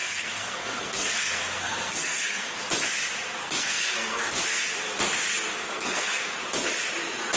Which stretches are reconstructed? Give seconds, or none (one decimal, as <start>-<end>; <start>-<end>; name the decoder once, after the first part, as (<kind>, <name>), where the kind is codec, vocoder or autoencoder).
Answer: 0.0-2.6 (codec, SNAC); 3.4-4.6; 5.6-6.2